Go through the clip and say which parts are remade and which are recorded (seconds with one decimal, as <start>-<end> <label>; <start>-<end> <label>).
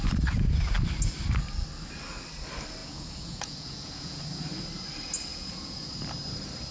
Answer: 0.0-2.8 recorded; 2.8-4.2 remade; 4.2-5.3 recorded; 5.3-5.9 remade; 5.9-6.7 recorded